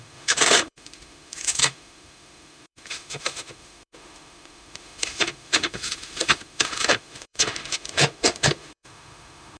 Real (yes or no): no